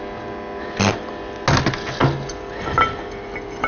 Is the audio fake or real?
real